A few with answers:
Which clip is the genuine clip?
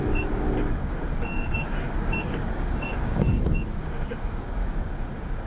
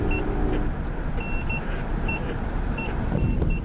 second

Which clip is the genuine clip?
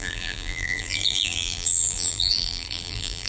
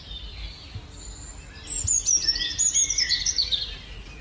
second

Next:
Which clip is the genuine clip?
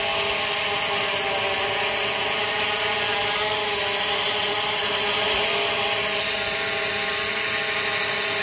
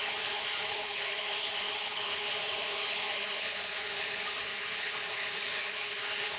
first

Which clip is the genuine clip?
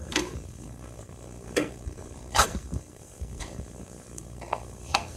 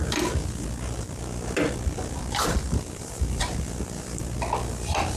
second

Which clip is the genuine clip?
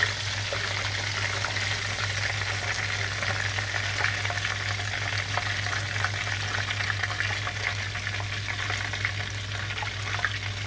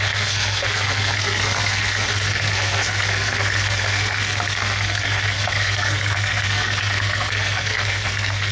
first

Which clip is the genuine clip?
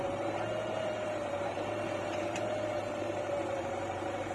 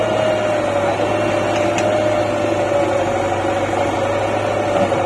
second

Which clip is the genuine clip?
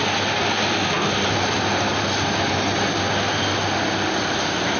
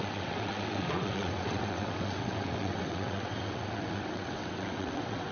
first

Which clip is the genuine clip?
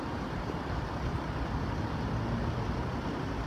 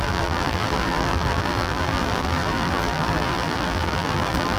first